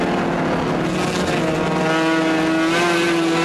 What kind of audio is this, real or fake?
real